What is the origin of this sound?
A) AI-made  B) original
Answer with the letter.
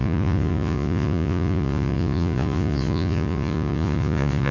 A